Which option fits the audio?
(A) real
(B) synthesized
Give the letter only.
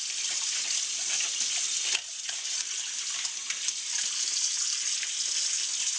A